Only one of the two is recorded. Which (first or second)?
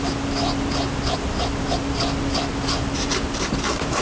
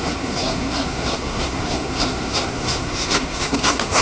first